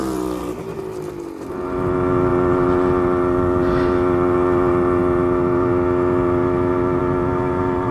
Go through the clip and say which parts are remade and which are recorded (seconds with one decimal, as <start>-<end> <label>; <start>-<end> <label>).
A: 0.0-0.8 remade; 0.8-7.9 recorded